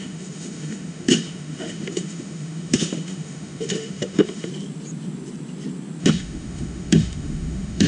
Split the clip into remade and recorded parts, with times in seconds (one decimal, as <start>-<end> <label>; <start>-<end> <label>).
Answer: 0.0-4.5 remade; 4.5-6.0 recorded; 6.0-7.9 remade

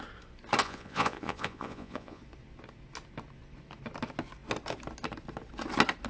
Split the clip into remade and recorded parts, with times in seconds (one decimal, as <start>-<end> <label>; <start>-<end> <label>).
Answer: 0.0-0.6 recorded; 0.6-2.2 remade; 2.2-6.1 recorded